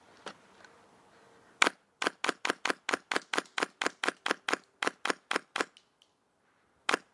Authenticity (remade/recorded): recorded